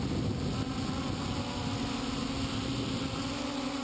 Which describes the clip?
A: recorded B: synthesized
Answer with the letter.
A